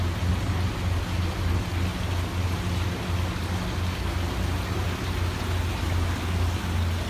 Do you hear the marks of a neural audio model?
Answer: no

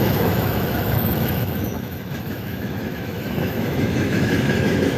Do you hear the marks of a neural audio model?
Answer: yes